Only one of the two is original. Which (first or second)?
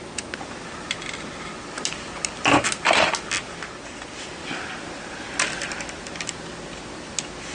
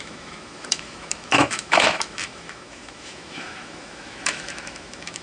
first